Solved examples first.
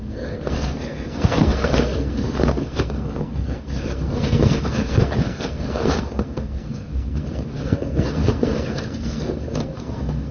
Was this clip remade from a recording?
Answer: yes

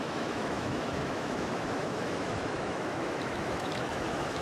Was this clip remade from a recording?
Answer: yes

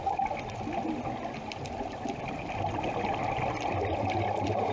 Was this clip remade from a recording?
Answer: no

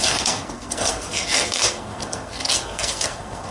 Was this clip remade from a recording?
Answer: yes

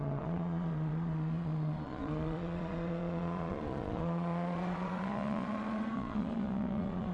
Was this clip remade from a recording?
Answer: yes